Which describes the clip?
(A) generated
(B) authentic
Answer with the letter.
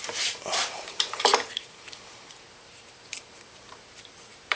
A